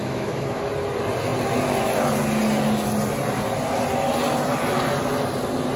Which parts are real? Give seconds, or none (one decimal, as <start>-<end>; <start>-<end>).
0.7-5.8